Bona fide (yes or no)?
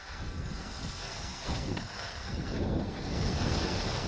no